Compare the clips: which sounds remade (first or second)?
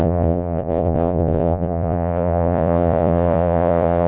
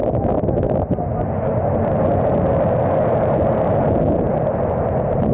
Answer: first